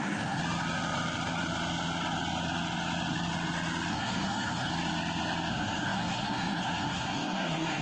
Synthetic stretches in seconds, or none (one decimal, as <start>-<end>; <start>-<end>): 0.0-0.4; 3.9-4.7; 5.5-7.8